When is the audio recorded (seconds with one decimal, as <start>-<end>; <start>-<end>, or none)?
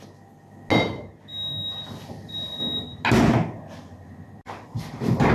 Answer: 0.0-5.3